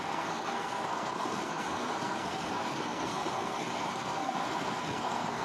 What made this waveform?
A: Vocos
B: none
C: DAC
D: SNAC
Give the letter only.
D